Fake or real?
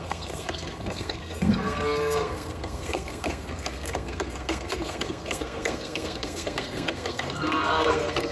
fake